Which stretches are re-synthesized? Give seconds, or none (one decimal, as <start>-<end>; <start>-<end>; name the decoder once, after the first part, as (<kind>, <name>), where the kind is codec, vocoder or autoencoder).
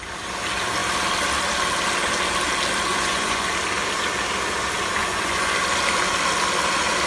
2.9-3.5 (vocoder, Vocos); 5.0-5.6